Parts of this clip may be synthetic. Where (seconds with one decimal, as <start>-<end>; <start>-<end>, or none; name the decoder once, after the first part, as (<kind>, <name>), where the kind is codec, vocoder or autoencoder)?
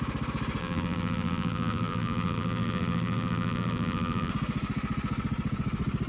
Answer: 0.6-4.3 (vocoder, BigVGAN v2)